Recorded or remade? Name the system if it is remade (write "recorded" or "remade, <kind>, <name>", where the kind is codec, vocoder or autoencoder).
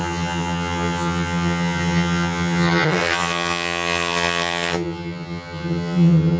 remade, vocoder, HiFi-GAN